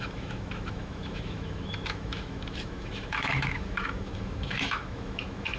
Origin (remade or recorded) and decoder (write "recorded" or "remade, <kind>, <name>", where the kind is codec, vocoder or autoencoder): remade, autoencoder, DAC-VAE